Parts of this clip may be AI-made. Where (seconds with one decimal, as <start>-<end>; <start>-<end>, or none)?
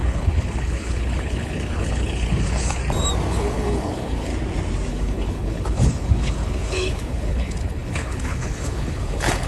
0.0-2.8; 3.3-4.3; 4.9-9.5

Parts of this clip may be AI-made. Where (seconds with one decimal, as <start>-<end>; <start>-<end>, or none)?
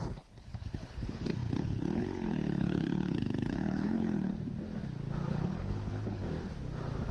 0.0-4.3; 5.3-6.2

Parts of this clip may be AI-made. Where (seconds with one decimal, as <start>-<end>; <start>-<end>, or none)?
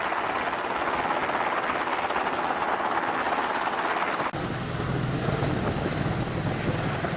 none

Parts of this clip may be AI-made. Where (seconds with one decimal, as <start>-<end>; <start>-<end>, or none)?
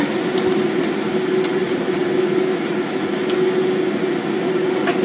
none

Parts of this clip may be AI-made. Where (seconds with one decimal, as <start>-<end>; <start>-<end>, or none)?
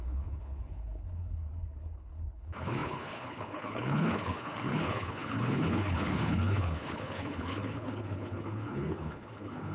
0.0-9.7